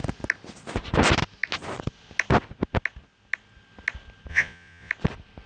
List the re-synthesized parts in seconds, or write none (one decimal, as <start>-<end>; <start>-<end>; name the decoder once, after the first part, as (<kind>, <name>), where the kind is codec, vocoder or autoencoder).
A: 4.3-4.9 (vocoder, Vocos)